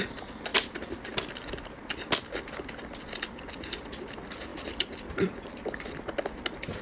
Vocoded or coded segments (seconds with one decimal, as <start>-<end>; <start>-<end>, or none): 4.5-5.7